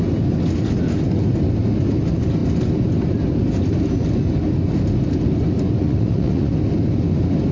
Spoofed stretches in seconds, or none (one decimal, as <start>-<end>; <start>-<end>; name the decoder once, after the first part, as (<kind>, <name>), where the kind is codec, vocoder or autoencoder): 5.8-6.5 (vocoder, Vocos)